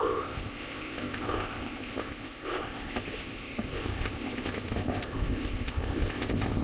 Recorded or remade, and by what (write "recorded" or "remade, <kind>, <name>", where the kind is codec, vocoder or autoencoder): remade, codec, ZipCodec